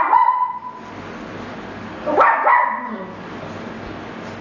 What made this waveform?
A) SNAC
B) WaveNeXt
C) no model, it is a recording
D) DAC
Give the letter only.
C